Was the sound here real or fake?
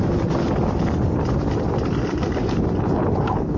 real